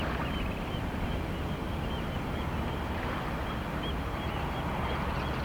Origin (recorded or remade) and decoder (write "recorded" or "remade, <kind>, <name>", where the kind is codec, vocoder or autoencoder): recorded